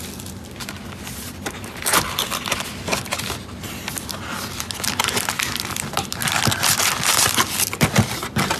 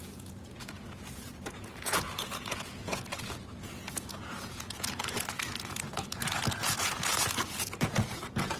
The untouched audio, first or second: first